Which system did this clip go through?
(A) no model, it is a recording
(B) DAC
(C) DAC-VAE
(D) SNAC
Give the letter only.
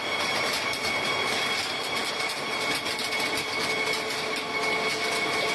A